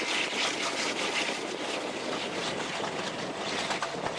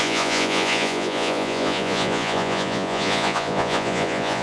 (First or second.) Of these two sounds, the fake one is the second